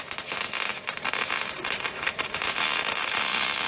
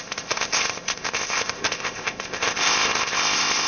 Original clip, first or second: first